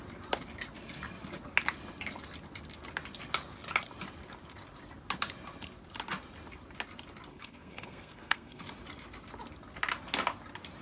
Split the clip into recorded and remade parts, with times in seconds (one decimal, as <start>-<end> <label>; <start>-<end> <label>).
0.0-7.3 recorded; 7.3-8.6 remade; 8.6-10.8 recorded